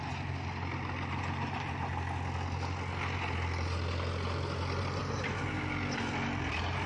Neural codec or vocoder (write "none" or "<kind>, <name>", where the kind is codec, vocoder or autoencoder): none